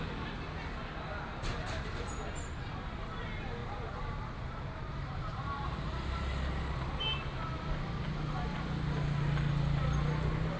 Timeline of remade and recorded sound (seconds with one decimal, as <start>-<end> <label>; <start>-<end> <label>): 0.0-1.5 recorded; 1.5-2.2 remade; 2.2-3.6 recorded; 3.6-7.4 remade; 7.4-10.6 recorded